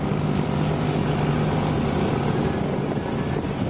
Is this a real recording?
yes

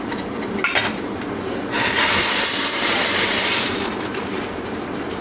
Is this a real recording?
no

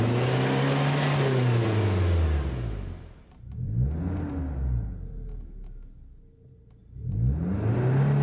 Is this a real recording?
yes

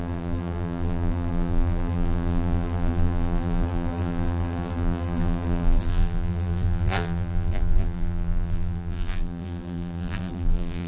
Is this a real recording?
no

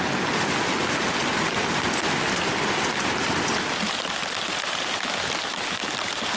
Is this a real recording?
yes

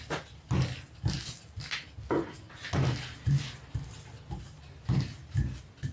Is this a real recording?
yes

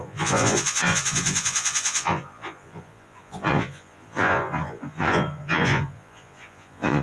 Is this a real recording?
no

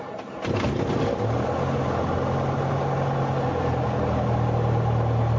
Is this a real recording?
yes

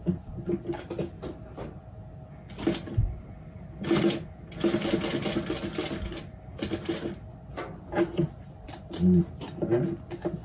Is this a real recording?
yes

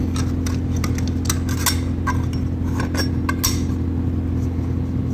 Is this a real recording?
yes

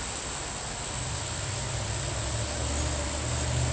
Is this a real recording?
yes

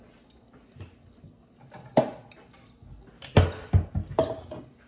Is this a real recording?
yes